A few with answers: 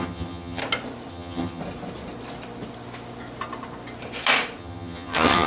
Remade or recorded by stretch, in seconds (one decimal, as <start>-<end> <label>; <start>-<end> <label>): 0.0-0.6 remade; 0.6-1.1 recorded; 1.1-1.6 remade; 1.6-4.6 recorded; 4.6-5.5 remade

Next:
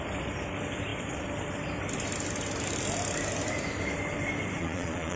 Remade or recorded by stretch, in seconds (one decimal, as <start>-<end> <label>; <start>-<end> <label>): 0.0-4.6 recorded; 4.6-5.2 remade

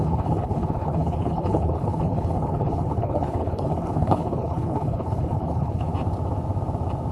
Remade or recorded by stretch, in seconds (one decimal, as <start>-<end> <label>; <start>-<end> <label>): 0.0-5.9 remade; 5.9-7.1 recorded

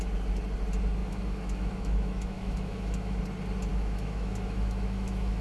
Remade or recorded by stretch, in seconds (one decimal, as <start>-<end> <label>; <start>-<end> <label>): 0.0-1.0 recorded; 1.0-3.2 remade; 3.2-3.7 recorded; 3.7-5.4 remade

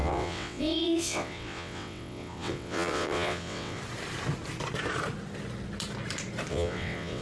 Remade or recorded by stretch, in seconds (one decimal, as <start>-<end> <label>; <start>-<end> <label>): 0.0-3.8 remade; 3.8-6.5 recorded; 6.5-7.2 remade

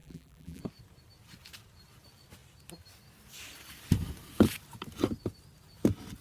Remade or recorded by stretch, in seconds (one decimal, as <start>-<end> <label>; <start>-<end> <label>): 0.0-0.6 remade; 0.6-6.2 recorded

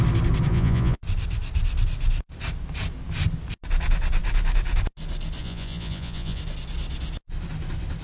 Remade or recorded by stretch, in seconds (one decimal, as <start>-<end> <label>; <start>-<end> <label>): 0.0-0.5 recorded; 0.5-1.0 remade; 1.0-5.4 recorded; 5.4-6.4 remade; 6.4-8.0 recorded